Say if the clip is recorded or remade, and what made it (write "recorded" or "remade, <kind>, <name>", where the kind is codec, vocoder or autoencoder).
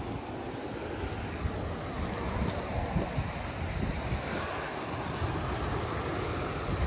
recorded